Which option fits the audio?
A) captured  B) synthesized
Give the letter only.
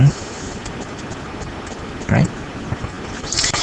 A